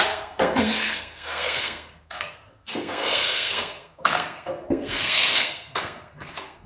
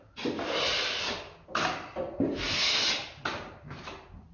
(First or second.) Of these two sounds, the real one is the second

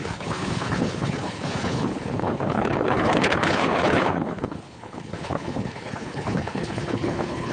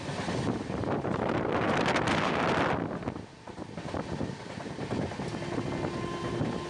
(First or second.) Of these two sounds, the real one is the second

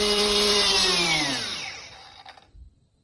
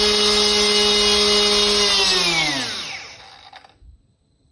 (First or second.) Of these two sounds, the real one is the second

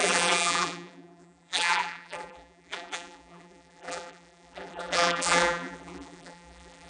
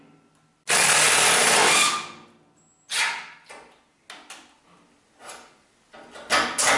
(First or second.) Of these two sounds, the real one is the second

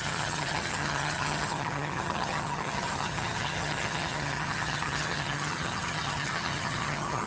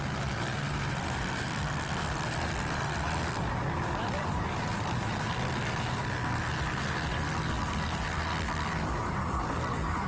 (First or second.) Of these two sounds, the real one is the second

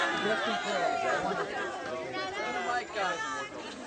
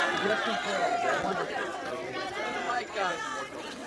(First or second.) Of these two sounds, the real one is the first